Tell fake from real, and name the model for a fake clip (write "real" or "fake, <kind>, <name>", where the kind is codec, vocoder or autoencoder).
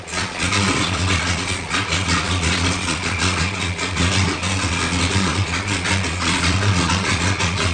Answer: fake, vocoder, Vocos